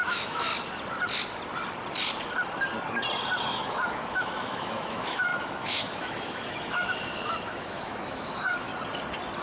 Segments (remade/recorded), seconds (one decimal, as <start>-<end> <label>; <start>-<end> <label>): 0.0-0.5 remade; 0.5-3.4 recorded; 3.4-8.7 remade; 8.7-9.4 recorded

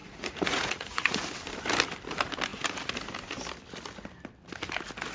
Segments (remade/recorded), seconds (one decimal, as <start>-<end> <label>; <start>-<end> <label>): 0.0-1.2 remade; 1.2-5.1 recorded

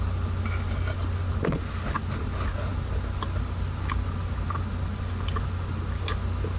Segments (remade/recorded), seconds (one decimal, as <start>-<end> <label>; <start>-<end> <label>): 0.0-6.6 recorded

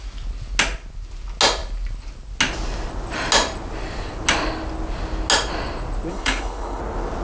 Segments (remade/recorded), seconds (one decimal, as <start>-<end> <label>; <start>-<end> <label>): 0.0-6.1 recorded; 6.1-6.8 remade; 6.8-7.2 recorded

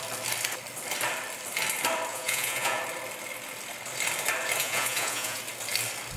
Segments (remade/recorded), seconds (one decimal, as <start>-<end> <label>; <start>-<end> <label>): 0.0-2.1 recorded; 2.1-2.8 remade; 2.8-4.6 recorded; 4.6-5.4 remade; 5.4-6.2 recorded

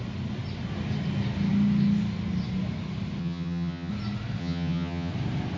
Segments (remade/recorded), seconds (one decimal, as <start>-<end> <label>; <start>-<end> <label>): 0.0-3.2 recorded; 3.2-3.9 remade; 3.9-4.4 recorded; 4.4-5.1 remade; 5.1-5.6 recorded

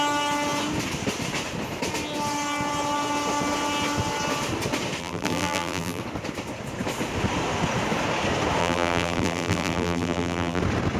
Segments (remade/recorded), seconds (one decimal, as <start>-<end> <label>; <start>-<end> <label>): 0.0-5.0 recorded; 5.0-6.0 remade; 6.0-8.6 recorded; 8.6-10.6 remade; 10.6-11.0 recorded

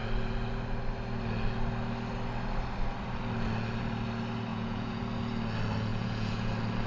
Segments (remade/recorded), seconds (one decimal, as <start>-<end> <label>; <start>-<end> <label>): 0.0-4.5 recorded; 4.5-5.0 remade; 5.0-5.9 recorded; 5.9-6.5 remade; 6.5-6.9 recorded